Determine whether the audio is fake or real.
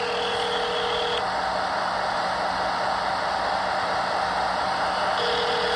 real